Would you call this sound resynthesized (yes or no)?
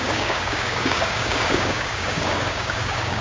yes